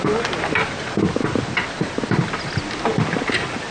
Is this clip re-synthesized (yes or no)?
no